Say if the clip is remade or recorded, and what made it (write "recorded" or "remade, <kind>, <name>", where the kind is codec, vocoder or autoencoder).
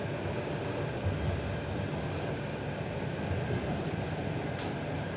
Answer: recorded